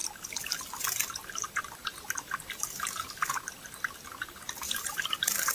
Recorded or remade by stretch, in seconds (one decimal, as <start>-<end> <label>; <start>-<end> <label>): 0.0-0.8 recorded; 0.8-5.5 remade

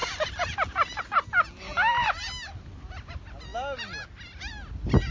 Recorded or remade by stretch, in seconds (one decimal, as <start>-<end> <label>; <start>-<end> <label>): 0.0-5.1 recorded